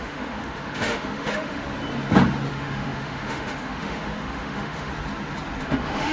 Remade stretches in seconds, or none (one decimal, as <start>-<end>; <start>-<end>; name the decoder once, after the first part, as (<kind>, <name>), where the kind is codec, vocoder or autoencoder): 0.0-1.6 (autoencoder, DAC-VAE); 2.5-4.9; 5.6-6.1